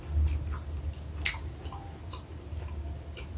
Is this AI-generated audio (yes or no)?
no